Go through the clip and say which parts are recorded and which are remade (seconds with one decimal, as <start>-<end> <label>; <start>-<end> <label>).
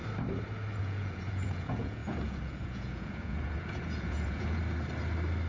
0.0-0.8 recorded; 0.8-4.6 remade; 4.6-5.5 recorded